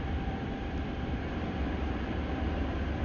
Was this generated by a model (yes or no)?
no